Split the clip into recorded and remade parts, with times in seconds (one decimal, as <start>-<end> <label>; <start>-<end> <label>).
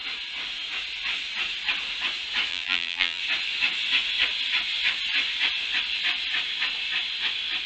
0.0-2.5 recorded; 2.5-3.2 remade; 3.2-7.7 recorded